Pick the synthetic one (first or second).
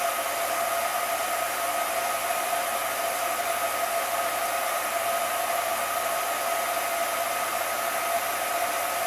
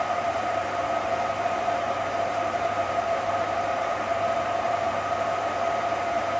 second